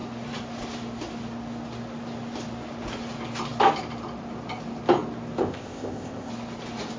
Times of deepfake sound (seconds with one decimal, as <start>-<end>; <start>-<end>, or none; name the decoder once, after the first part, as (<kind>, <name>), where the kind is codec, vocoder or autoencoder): 5.4-6.3 (codec, ZipCodec)